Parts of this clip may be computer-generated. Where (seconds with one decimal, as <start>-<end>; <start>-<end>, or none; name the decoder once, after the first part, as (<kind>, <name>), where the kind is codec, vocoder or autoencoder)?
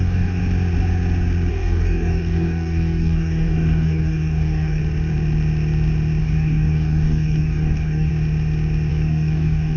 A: 0.0-0.4 (codec, DAC); 1.5-4.8; 6.2-8.1; 8.9-9.8